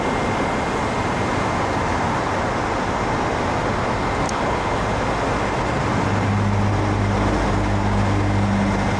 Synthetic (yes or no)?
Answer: no